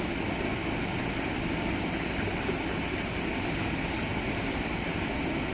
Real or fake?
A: real